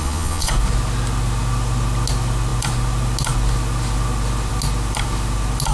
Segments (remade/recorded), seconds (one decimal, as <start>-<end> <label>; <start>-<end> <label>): 0.0-0.5 remade; 0.5-5.7 recorded

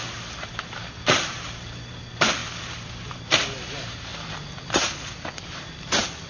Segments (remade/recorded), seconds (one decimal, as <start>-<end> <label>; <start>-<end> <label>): 0.0-4.1 remade; 4.1-4.7 recorded; 4.7-6.3 remade

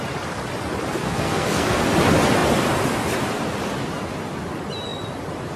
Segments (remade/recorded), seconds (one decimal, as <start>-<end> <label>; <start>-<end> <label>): 0.0-1.0 recorded; 1.0-1.8 remade; 1.8-5.6 recorded

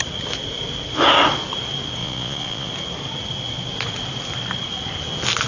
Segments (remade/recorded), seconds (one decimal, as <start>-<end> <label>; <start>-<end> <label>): 0.0-2.0 recorded; 2.0-2.7 remade; 2.7-5.5 recorded

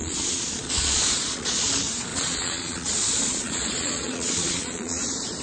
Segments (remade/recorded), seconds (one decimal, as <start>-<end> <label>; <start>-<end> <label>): 0.0-1.6 remade; 1.6-2.1 recorded; 2.1-5.4 remade